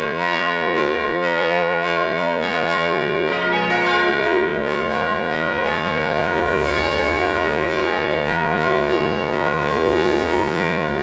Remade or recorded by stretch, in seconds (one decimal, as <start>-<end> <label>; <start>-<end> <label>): 0.0-3.3 remade; 3.3-4.1 recorded; 4.1-11.0 remade